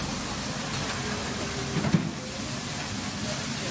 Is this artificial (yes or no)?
no